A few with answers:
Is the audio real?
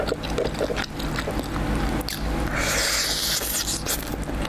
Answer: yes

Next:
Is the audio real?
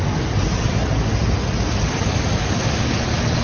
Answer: yes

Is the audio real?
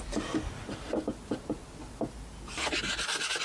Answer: yes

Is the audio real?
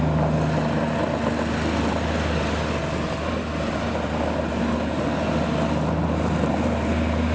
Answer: yes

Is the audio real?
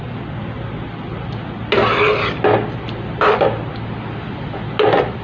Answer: yes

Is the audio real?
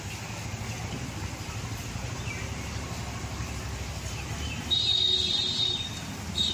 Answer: yes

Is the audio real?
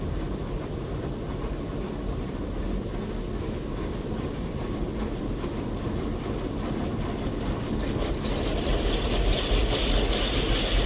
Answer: yes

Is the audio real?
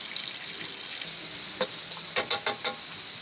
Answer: yes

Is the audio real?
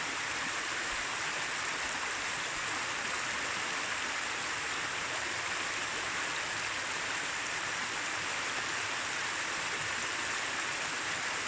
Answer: yes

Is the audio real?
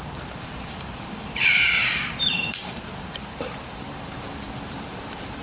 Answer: no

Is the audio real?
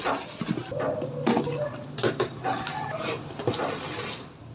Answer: yes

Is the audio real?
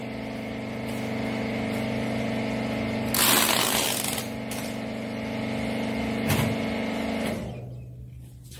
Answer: yes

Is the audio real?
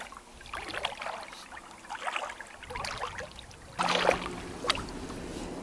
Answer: yes